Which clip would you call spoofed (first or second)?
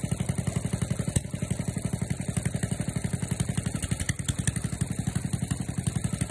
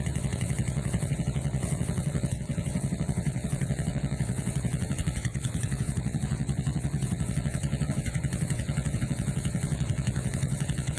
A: second